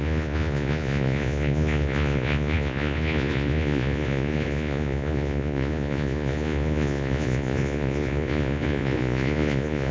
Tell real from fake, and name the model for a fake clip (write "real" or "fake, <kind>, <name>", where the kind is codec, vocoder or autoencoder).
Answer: fake, vocoder, Vocos